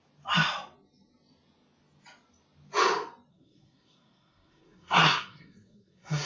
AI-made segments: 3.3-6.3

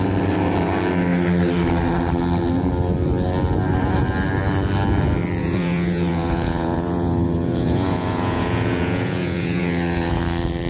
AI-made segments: 5.4-10.2

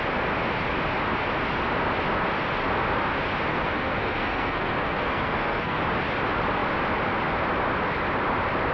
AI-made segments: 3.5-5.8

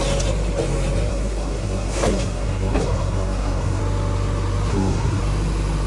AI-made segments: 1.1-3.8; 4.7-5.2

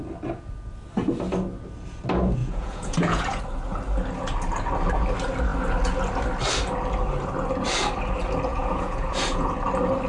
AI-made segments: 2.4-3.4; 8.5-9.5

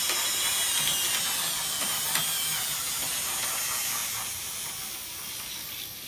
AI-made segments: none